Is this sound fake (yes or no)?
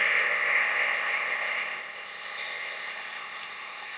yes